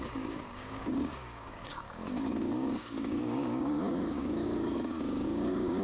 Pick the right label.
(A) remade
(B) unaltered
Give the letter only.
A